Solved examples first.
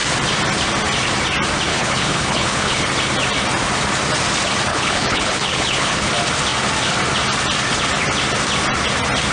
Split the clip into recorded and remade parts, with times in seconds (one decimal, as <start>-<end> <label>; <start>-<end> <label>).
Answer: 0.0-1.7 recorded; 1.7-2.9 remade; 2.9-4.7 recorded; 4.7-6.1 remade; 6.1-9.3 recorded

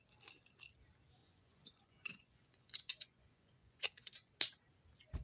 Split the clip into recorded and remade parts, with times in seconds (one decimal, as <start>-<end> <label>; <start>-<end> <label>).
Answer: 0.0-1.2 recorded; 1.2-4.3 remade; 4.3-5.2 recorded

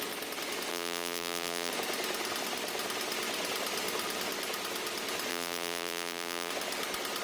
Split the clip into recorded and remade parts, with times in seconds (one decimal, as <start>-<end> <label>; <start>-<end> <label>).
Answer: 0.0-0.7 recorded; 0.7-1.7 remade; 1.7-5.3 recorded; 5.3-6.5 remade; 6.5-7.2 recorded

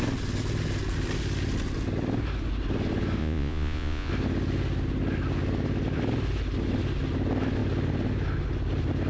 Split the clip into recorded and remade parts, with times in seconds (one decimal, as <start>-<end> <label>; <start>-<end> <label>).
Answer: 0.0-3.2 recorded; 3.2-4.1 remade; 4.1-9.1 recorded

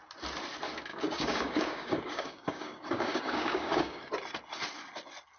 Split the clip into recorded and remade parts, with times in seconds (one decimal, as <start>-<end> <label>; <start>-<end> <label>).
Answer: 0.0-0.9 recorded; 0.9-4.1 remade; 4.1-5.4 recorded